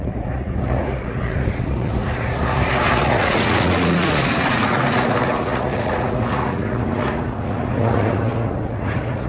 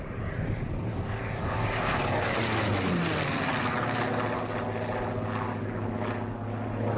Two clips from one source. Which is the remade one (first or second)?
first